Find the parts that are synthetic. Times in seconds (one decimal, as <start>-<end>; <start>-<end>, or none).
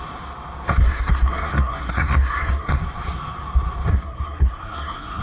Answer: 0.8-2.8; 3.9-5.2